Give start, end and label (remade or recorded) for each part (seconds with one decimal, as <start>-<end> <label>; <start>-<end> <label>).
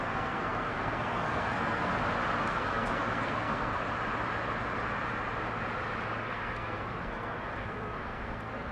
0.0-1.9 remade; 1.9-2.4 recorded; 2.4-3.8 remade; 3.8-6.2 recorded; 6.2-8.7 remade